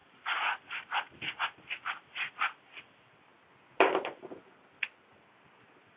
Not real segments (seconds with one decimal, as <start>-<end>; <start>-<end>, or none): none